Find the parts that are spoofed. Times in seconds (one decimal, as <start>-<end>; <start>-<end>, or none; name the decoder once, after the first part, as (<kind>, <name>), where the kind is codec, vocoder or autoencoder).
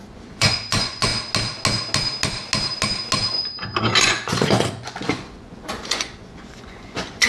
0.0-1.1 (vocoder, Vocos); 3.3-7.3